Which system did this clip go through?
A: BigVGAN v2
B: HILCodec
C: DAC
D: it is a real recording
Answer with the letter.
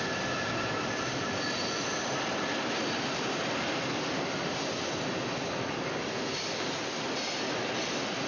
D